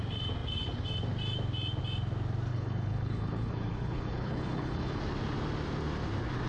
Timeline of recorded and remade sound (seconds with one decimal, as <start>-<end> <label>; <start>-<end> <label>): 0.0-2.5 recorded; 2.5-5.0 remade; 5.0-6.5 recorded